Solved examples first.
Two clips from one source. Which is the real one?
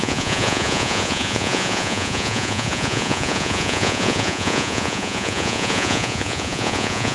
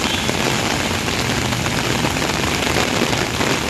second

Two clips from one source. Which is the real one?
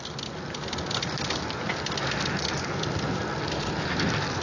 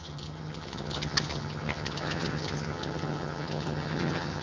first